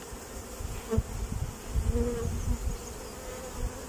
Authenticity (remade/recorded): recorded